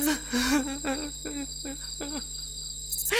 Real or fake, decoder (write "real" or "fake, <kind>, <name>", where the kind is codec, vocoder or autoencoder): real